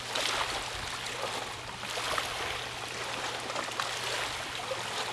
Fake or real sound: real